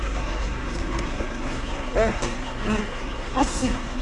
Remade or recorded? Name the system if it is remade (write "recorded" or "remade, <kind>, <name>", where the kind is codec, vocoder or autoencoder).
remade, codec, SNAC